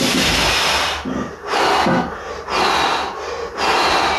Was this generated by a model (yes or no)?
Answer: no